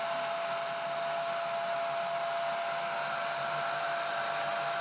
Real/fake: real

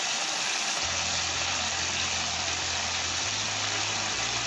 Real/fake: real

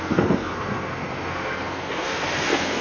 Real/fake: fake